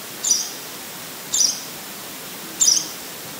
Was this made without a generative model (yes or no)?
no